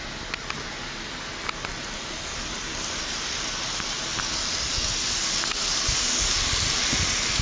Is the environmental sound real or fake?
real